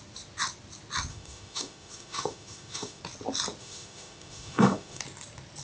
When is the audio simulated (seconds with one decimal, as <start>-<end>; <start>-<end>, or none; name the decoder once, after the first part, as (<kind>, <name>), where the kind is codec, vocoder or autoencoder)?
1.1-3.0 (autoencoder, DAC-VAE); 3.6-5.0